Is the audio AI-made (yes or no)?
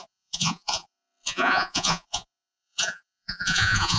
yes